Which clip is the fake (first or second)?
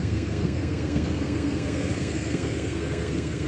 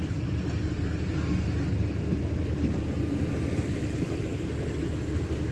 first